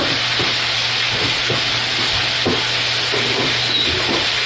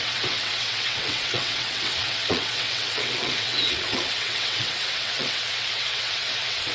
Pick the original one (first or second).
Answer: first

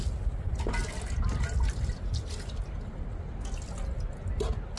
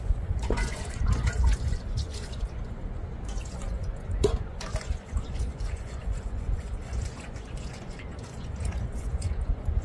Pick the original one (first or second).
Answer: first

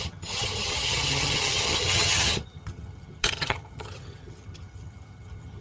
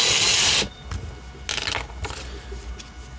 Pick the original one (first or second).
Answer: second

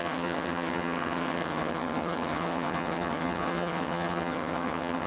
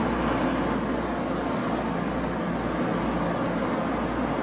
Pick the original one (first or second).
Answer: second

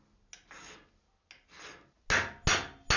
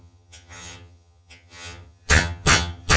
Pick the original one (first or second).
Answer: first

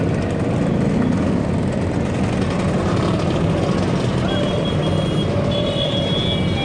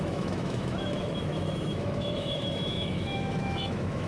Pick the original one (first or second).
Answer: first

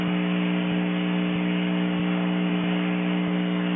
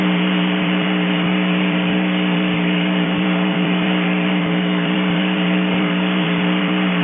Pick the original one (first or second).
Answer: first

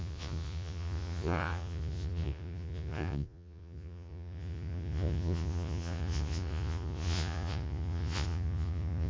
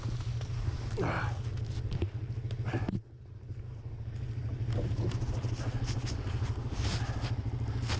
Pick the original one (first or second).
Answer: second